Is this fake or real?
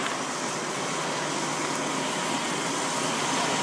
real